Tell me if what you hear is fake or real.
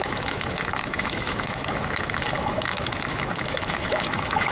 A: fake